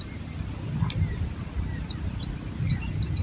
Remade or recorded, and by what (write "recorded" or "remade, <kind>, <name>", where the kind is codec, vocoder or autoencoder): recorded